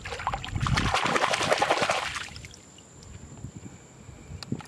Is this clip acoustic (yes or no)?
yes